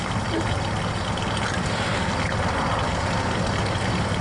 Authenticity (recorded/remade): recorded